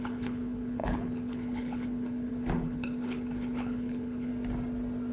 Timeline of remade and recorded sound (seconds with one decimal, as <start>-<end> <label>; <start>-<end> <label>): 0.0-4.3 remade; 4.3-5.1 recorded